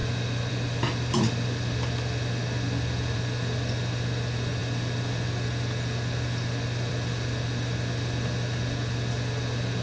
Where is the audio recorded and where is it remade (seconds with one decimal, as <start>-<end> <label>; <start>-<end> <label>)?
0.0-9.8 recorded